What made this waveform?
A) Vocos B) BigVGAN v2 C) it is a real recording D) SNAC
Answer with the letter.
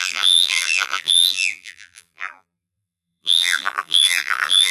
B